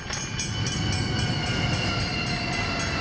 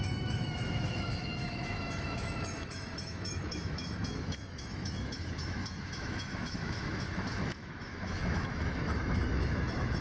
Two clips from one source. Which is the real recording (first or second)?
first